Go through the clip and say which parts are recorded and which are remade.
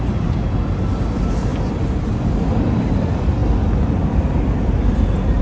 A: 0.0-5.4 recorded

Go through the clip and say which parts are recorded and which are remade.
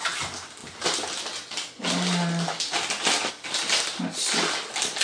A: 0.0-5.0 recorded